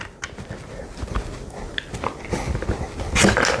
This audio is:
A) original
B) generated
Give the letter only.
A